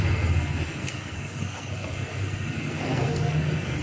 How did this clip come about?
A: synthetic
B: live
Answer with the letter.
A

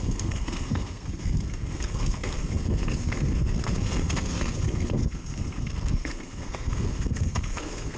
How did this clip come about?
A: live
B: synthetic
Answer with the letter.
B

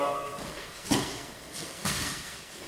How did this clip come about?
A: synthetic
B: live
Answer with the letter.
A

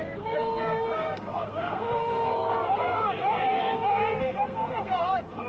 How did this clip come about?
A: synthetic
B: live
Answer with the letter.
A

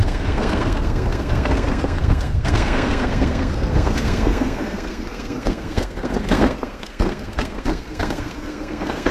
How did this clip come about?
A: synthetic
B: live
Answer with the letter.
A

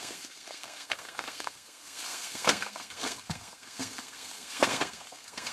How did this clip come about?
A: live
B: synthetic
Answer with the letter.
B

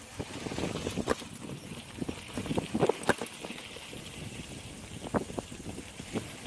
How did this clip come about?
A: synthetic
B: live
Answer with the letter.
B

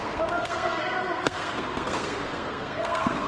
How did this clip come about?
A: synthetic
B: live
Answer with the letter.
A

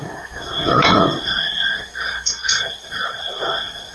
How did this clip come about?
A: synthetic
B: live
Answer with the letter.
A